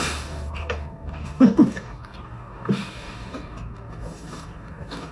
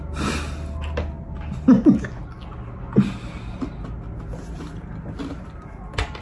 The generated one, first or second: first